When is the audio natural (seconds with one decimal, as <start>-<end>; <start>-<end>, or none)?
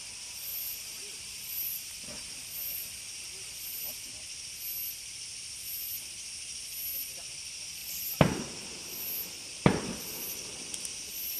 0.0-0.5; 4.1-7.8; 8.4-11.4